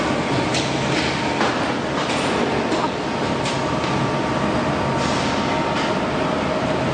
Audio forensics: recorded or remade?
recorded